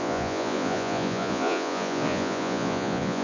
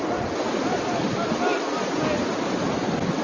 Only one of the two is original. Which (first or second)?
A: second